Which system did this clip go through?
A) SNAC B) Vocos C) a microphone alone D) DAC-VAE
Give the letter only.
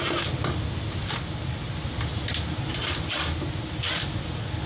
C